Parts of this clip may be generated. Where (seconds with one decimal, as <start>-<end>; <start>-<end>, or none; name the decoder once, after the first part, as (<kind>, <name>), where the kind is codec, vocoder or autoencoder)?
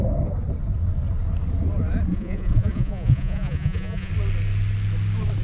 2.1-4.1 (vocoder, Vocos)